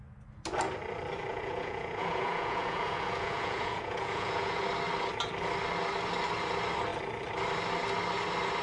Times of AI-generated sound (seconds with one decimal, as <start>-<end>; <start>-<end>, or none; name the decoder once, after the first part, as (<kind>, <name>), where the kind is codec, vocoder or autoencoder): 1.3-4.6 (vocoder, Vocos)